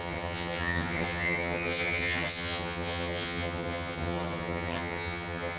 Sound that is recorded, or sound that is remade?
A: remade